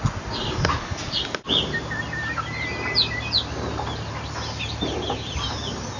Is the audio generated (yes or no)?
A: no